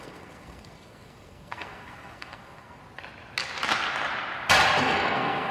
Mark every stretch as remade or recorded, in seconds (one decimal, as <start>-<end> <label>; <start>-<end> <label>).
0.0-2.8 remade; 2.8-4.8 recorded; 4.8-5.5 remade